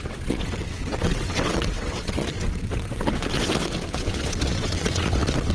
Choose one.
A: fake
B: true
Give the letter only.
A